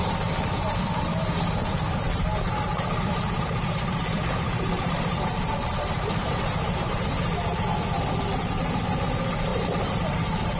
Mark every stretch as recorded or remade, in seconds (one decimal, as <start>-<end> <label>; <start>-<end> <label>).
0.0-2.7 recorded; 2.7-6.8 remade; 6.8-9.5 recorded; 9.5-10.6 remade